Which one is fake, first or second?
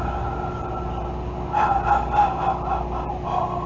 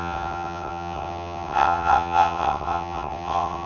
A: second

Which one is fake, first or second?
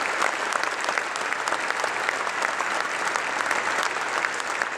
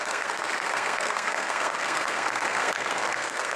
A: second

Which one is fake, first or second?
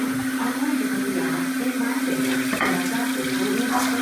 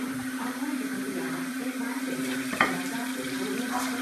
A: second